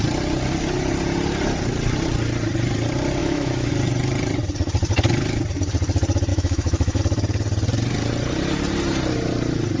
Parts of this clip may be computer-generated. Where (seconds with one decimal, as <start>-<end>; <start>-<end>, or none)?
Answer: 3.2-3.7; 6.3-7.0